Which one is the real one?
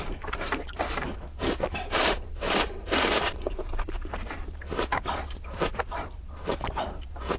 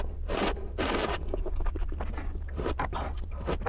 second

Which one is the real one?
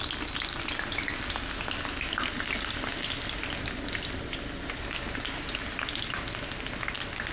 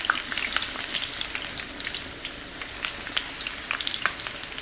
first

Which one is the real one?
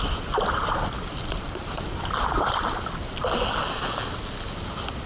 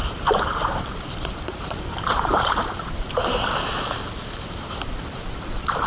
first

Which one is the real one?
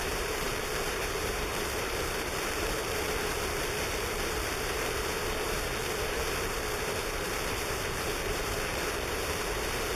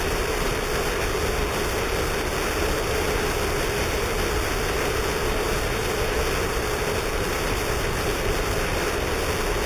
second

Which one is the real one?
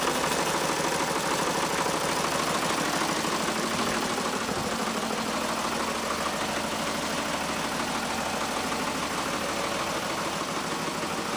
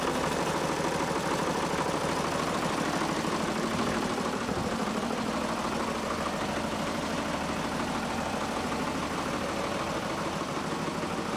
first